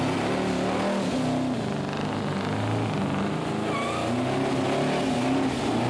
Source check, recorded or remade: recorded